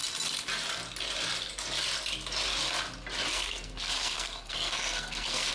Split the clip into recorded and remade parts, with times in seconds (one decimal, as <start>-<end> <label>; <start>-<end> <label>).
0.0-3.3 recorded; 3.3-5.5 remade